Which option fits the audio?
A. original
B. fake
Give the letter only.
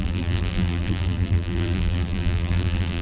B